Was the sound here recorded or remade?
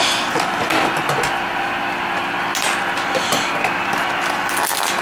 recorded